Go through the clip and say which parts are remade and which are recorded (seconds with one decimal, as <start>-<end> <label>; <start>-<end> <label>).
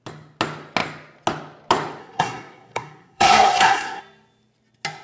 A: 0.0-2.0 recorded; 2.0-4.0 remade; 4.0-5.0 recorded